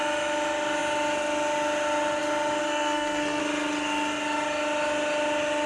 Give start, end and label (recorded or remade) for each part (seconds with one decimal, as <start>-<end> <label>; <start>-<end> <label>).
0.0-2.6 recorded; 2.6-3.4 remade; 3.4-5.7 recorded